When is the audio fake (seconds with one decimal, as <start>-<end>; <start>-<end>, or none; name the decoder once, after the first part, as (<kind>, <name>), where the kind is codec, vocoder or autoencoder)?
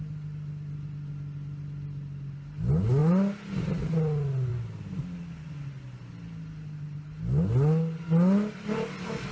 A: none